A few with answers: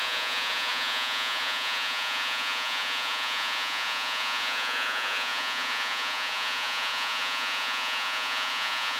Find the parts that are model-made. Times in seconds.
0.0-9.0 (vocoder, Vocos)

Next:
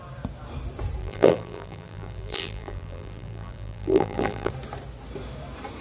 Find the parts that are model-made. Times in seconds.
1.0-4.5 (vocoder, BigVGAN v2)

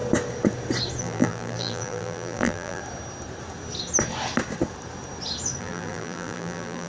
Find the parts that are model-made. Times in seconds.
1.0-2.8 (vocoder, BigVGAN v2); 5.6-6.9

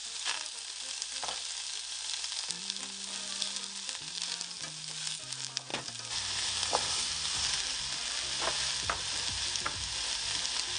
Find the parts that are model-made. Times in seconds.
none

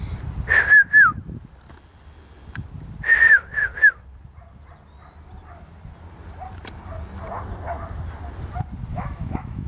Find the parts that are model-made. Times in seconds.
8.9-9.7 (autoencoder, DAC-VAE)

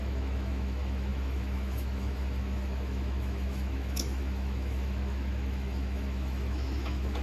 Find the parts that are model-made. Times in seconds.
0.0-7.2 (autoencoder, DAC-VAE)

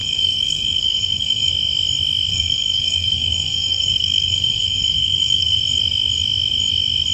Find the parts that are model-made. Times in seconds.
0.0-1.5 (codec, SNAC); 2.3-5.6